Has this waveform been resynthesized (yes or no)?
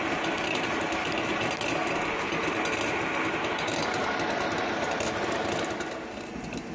no